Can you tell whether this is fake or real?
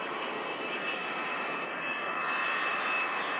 fake